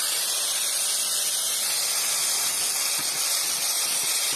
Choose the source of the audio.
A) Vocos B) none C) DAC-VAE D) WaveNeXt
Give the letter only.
B